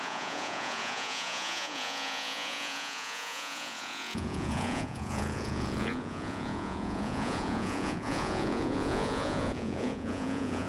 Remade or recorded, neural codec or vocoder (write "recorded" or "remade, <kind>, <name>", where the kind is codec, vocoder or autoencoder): remade, vocoder, Vocos